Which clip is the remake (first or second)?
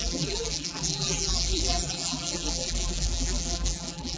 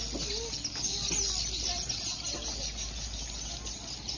first